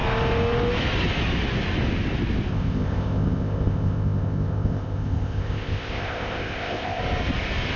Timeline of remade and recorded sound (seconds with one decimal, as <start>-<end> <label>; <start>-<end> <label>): 0.0-2.5 recorded; 2.5-7.0 remade; 7.0-7.8 recorded